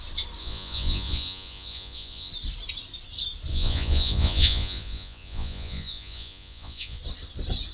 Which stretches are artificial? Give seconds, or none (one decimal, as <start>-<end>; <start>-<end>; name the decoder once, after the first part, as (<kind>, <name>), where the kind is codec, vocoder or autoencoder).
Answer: 0.4-2.3 (vocoder, Vocos); 3.5-7.0